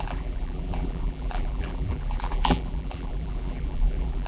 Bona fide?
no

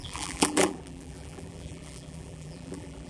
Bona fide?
no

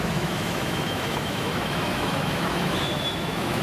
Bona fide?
no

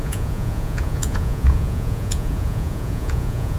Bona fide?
no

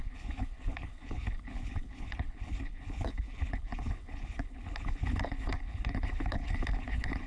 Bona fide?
no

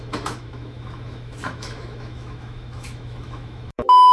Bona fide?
no